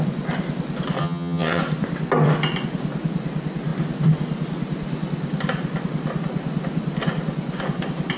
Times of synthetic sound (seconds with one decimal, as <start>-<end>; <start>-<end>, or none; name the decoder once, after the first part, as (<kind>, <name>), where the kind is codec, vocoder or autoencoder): 1.0-1.6 (vocoder, HiFi-GAN)